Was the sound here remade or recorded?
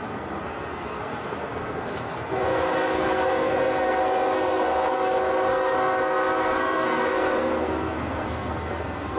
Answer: remade